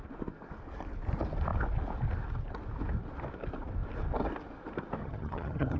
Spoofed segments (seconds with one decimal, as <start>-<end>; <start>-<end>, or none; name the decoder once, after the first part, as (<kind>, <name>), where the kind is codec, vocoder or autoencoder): 5.0-5.8 (vocoder, HiFi-GAN)